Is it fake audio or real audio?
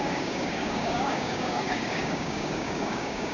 fake